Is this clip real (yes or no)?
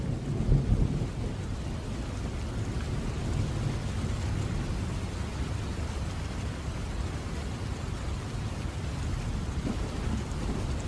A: yes